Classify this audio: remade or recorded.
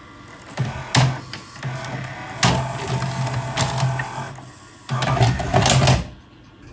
recorded